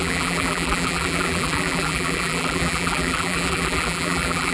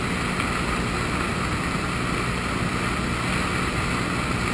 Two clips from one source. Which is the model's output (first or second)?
first